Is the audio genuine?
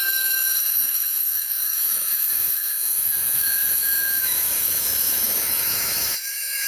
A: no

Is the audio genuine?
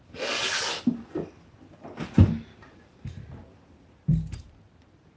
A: yes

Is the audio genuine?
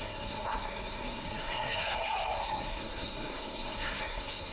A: no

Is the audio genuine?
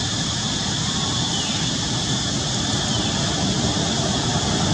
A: yes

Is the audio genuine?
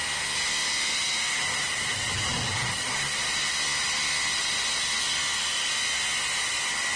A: yes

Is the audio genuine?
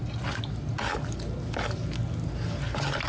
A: yes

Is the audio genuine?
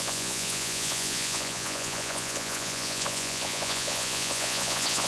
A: no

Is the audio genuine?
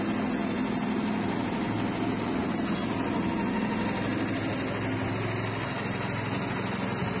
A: yes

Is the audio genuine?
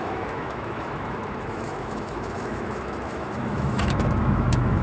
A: no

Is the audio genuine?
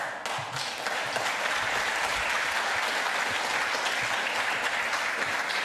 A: yes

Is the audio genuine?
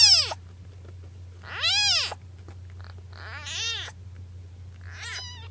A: yes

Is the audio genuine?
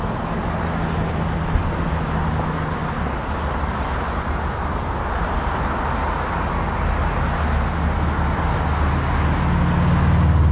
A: yes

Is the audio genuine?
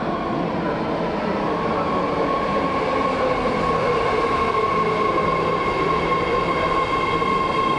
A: yes